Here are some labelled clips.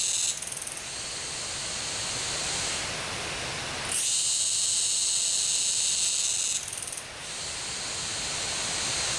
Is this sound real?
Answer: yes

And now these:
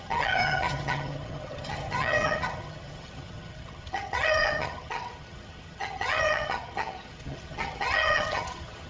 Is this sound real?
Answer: no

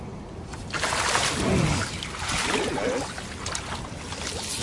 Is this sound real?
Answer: yes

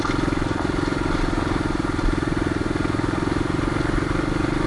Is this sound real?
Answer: yes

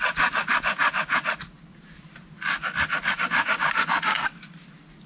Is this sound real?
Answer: yes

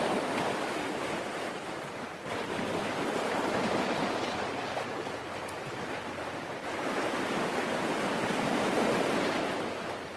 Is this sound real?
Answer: no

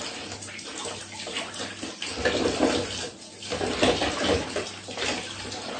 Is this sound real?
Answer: yes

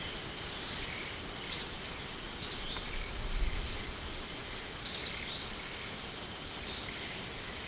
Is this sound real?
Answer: yes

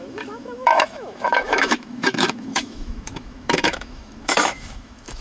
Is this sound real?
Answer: no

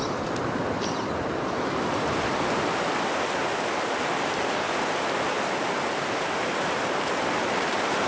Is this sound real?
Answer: yes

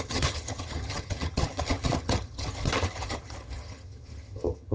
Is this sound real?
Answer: no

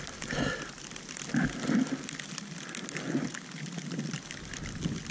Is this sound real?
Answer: yes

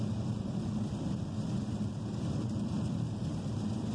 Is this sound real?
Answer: yes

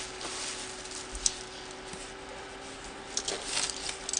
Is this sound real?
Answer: yes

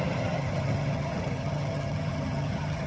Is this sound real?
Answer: no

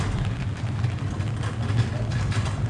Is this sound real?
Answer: yes